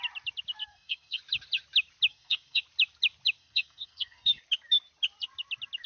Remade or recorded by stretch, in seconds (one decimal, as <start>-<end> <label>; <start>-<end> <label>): 0.0-0.6 recorded; 0.6-1.2 remade; 1.2-2.1 recorded; 2.1-2.6 remade; 2.6-3.4 recorded; 3.4-4.4 remade; 4.4-5.9 recorded